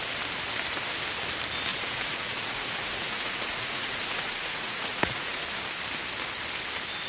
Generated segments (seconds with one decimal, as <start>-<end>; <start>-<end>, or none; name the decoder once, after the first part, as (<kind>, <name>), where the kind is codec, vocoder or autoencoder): 1.7-5.4 (vocoder, Vocos)